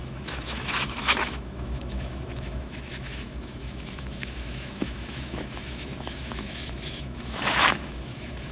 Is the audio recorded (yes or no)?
no